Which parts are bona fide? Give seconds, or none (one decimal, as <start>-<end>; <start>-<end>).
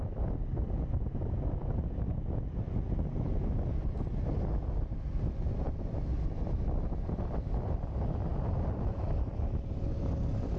0.0-10.6